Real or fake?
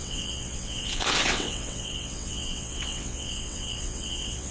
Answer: fake